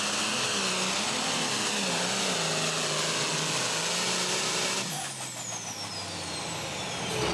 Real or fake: real